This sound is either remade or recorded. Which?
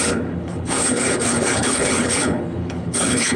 remade